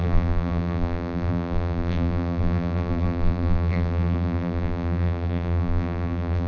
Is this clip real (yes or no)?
no